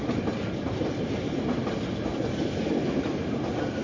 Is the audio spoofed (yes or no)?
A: no